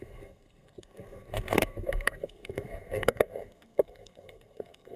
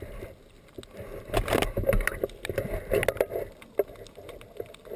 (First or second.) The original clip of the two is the second